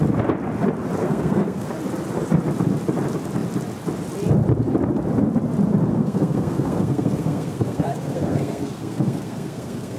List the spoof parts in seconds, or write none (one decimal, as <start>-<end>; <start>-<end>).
1.0-1.7; 5.9-10.0